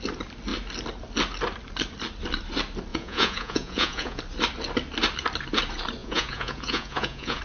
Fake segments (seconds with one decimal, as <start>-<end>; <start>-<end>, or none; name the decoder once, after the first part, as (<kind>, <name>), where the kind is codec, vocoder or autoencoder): 2.9-4.2 (vocoder, Vocos); 6.0-7.4